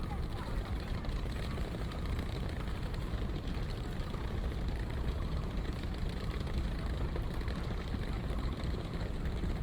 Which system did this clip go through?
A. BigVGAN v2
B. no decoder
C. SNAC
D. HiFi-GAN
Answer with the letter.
A